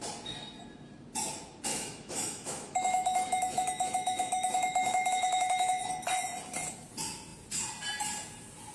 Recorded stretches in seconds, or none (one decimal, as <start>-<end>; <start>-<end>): 0.0-1.7; 5.9-8.7